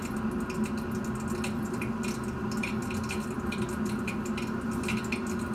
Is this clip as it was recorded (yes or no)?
yes